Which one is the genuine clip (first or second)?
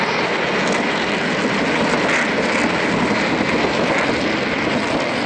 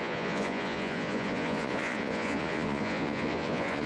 first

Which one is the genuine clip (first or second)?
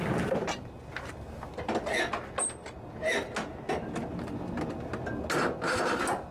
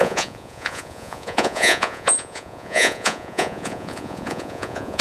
first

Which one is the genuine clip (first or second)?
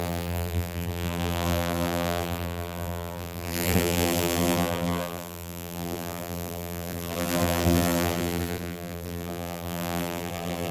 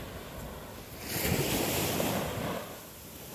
second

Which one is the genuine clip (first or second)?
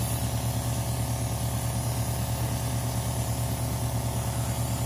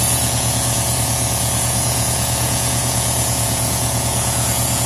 first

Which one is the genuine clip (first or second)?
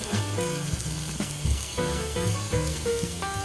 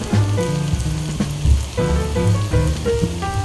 second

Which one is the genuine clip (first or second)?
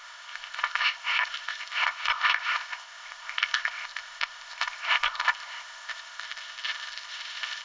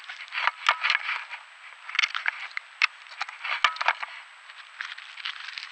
second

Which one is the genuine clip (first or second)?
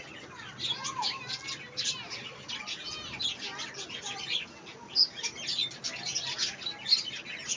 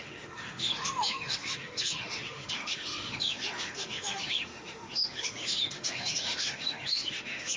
first